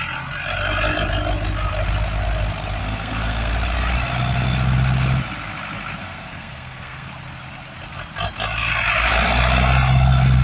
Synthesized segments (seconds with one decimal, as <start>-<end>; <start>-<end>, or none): 2.8-3.5; 6.0-7.1